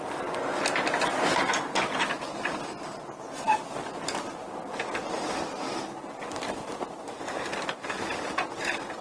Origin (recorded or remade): recorded